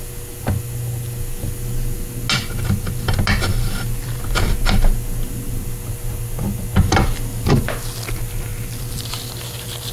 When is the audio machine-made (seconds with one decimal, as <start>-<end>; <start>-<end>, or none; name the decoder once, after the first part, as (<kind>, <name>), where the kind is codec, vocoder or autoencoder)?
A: 3.5-4.2 (vocoder, BigVGAN v2); 8.5-9.1